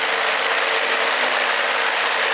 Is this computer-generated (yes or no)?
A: no